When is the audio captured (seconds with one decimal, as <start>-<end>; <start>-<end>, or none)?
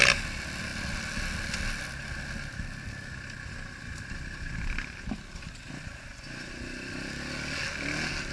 0.0-5.9; 6.5-8.3